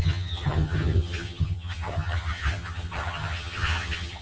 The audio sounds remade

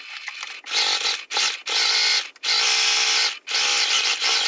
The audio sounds recorded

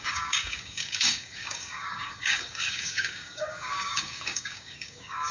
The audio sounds remade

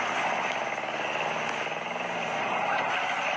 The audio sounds recorded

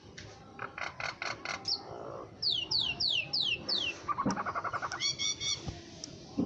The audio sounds recorded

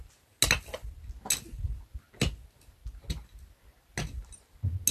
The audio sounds recorded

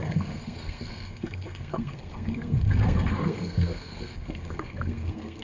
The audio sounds remade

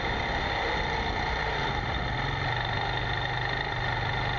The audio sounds recorded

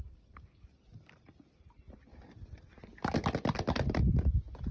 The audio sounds recorded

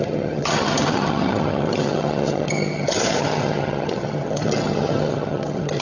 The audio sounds remade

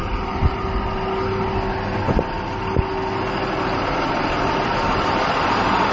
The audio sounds recorded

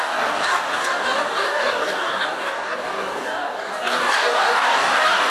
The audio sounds remade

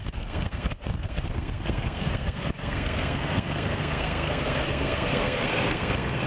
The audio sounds remade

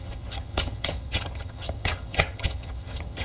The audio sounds remade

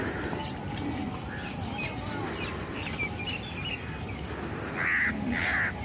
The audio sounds recorded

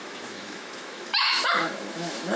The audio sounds remade